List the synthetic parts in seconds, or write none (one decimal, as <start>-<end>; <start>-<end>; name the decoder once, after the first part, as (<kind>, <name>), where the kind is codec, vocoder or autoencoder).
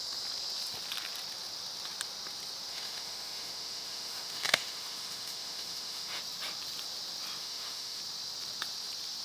2.7-6.2 (autoencoder, DAC-VAE); 7.4-8.0